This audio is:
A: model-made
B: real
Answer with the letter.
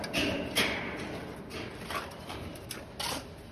B